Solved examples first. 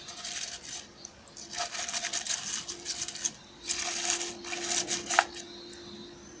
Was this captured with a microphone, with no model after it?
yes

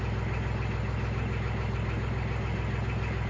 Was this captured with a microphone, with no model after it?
yes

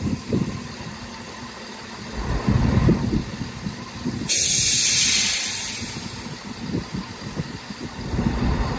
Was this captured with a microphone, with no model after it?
yes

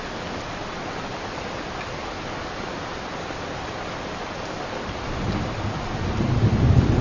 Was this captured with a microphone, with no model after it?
yes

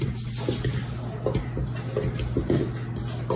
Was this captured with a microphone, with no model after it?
yes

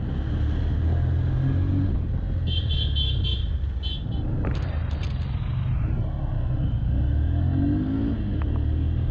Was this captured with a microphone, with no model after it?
yes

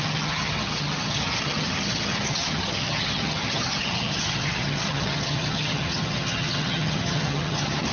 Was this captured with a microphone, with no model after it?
no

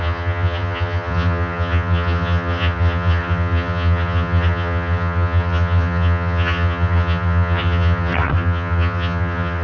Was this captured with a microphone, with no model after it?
no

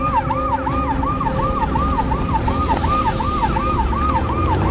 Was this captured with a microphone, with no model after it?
yes